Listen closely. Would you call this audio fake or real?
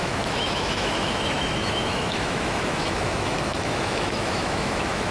fake